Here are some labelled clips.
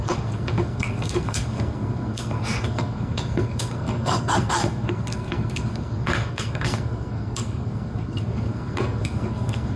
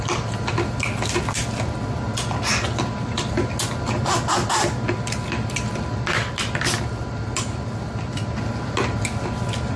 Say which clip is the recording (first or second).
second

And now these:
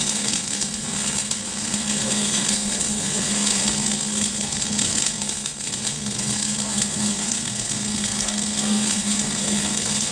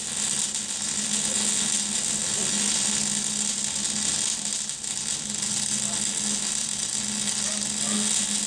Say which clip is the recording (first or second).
second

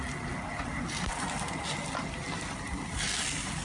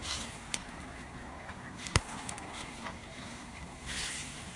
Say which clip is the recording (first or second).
first